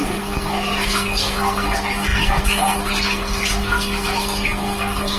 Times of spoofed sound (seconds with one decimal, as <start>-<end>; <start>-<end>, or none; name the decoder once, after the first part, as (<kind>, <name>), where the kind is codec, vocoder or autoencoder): 0.0-5.2 (codec, SNAC)